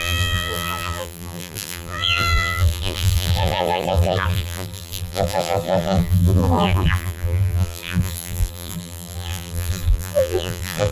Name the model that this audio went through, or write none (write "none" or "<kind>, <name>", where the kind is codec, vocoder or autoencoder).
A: vocoder, BigVGAN v2